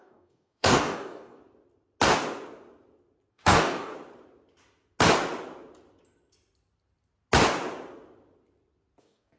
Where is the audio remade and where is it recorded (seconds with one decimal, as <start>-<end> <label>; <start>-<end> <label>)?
0.0-1.4 remade; 1.4-3.3 recorded; 3.3-3.9 remade; 3.9-9.0 recorded; 9.0-9.4 remade